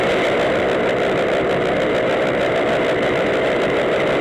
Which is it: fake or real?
real